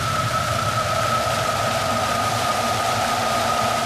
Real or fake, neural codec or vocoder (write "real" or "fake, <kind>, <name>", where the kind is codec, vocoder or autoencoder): real